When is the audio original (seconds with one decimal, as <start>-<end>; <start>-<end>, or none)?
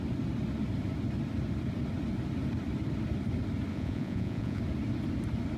0.0-3.7; 4.6-5.6